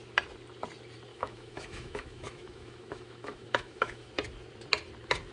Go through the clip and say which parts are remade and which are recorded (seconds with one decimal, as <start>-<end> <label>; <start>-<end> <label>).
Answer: 0.0-1.1 recorded; 1.1-4.1 remade; 4.1-5.3 recorded

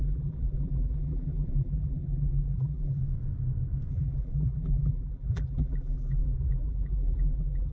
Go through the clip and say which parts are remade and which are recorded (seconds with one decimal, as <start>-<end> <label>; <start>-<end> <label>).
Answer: 0.0-3.0 remade; 3.0-3.9 recorded; 3.9-7.7 remade

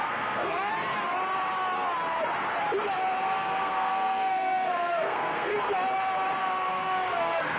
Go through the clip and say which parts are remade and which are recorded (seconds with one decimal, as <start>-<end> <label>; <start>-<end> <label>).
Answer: 0.0-0.7 remade; 0.7-3.2 recorded; 3.2-5.5 remade; 5.5-6.4 recorded; 6.4-7.6 remade

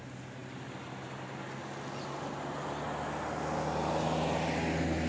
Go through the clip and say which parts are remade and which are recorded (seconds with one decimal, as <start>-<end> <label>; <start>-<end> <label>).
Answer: 0.0-5.1 recorded

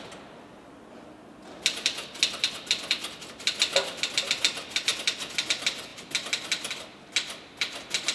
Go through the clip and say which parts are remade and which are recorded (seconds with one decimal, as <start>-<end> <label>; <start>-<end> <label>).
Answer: 0.0-8.1 recorded